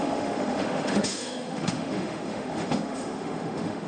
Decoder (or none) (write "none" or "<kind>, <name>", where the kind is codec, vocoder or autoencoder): autoencoder, DAC-VAE